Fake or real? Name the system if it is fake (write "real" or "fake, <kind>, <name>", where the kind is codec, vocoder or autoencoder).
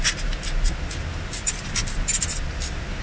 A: real